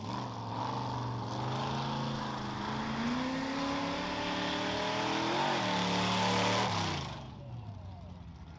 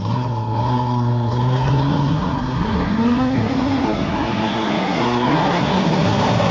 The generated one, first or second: second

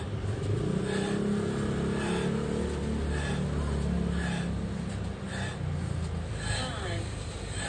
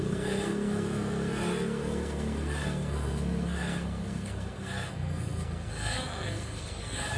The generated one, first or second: second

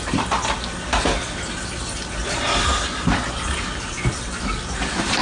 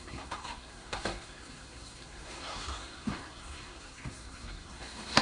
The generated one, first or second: second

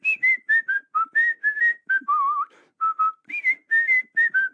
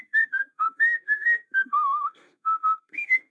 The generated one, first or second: second